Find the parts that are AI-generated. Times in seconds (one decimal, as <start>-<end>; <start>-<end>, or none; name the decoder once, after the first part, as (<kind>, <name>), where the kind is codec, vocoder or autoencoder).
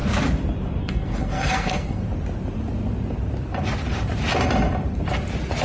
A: 0.8-2.0 (codec, SNAC)